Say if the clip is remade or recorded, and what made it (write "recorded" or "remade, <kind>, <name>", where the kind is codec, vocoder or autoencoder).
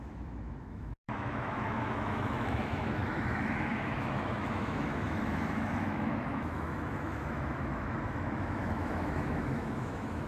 remade, autoencoder, DAC-VAE